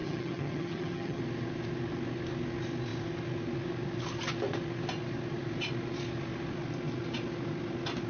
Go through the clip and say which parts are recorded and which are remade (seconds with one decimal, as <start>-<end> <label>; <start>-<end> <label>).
0.0-1.2 remade; 1.2-8.1 recorded